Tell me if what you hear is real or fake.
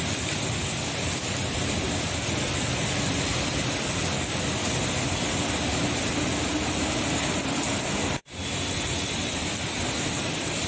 real